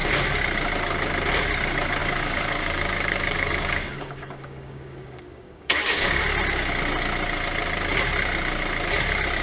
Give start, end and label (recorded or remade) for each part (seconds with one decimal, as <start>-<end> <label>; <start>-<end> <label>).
0.0-2.0 recorded; 2.0-6.2 remade; 6.2-9.4 recorded